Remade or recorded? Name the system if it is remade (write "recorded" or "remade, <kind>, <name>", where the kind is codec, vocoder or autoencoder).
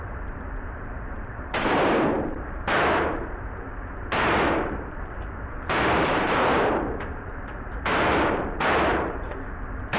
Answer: remade, vocoder, BigVGAN v2